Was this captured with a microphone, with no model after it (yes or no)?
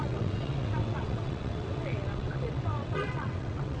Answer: no